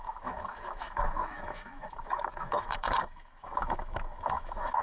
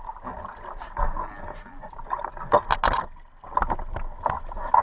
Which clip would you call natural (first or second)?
second